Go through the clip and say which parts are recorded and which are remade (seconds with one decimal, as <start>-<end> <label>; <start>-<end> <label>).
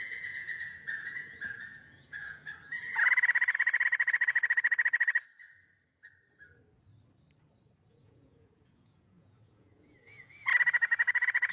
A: 0.0-2.7 remade; 2.7-7.9 recorded; 7.9-10.5 remade; 10.5-11.5 recorded